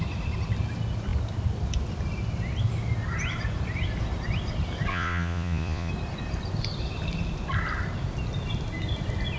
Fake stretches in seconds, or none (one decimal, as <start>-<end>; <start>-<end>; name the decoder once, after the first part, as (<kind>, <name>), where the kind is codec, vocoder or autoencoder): 4.9-5.9 (vocoder, Vocos)